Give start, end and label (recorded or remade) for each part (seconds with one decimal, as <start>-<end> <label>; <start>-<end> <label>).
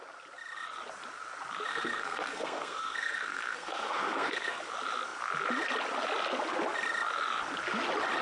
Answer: 0.0-1.7 recorded; 1.7-4.6 remade; 4.6-8.2 recorded